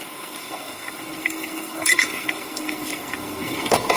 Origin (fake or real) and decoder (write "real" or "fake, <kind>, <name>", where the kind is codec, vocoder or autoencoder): fake, codec, SNAC